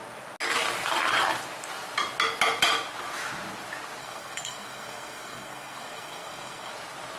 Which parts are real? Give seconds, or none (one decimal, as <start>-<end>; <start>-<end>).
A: 0.0-4.0; 6.7-7.2